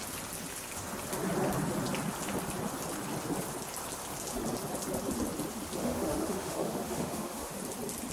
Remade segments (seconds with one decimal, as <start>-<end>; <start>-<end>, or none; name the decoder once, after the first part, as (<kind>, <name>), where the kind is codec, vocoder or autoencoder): 5.8-7.6 (autoencoder, DAC-VAE)